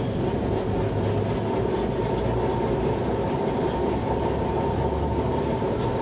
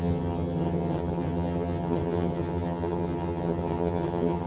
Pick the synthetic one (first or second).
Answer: second